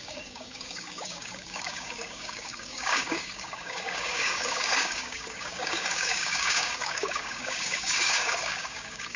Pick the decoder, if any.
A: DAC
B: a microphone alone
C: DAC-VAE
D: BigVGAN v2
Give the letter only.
A